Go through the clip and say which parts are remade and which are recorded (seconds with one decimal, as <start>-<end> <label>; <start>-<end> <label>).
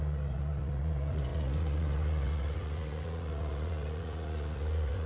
0.0-5.1 remade